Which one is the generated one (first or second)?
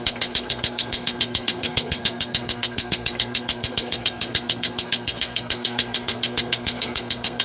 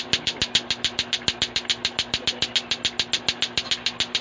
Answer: first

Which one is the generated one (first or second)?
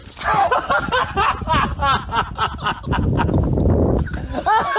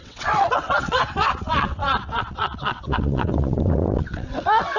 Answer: second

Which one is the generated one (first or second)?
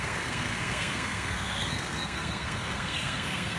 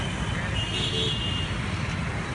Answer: first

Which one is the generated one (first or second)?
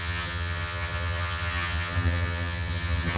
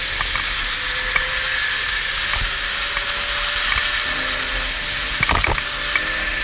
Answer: first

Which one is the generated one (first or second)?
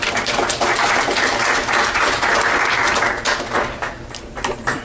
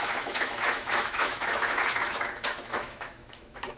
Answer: second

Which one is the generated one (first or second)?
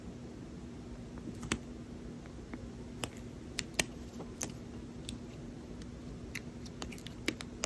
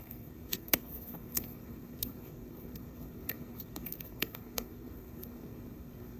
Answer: second